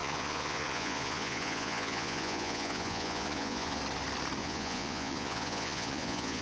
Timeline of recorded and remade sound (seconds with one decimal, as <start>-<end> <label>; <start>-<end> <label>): 0.0-3.8 remade; 3.8-4.4 recorded; 4.4-6.4 remade